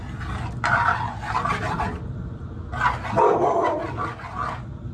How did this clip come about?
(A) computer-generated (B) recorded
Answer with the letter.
B